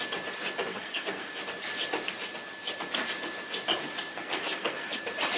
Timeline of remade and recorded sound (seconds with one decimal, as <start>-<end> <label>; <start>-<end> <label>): 0.0-0.7 recorded; 0.7-1.3 remade; 1.3-4.1 recorded; 4.1-5.0 remade; 5.0-5.4 recorded